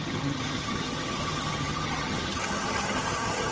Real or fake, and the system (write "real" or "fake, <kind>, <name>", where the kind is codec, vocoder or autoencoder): fake, vocoder, HiFi-GAN